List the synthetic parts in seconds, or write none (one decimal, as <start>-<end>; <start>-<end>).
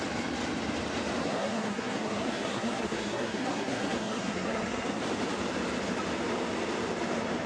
1.2-5.0